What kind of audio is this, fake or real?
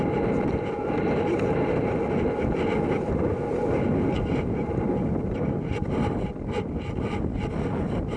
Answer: real